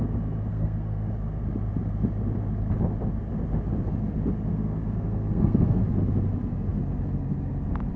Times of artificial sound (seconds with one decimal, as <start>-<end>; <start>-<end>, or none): 0.5-1.1; 4.5-5.8